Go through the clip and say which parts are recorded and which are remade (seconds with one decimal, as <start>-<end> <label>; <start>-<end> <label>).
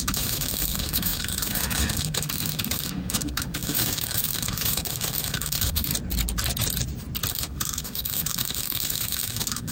0.0-5.9 remade; 5.9-7.3 recorded; 7.3-9.7 remade